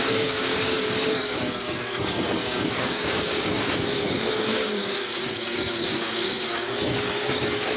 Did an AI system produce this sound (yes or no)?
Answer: yes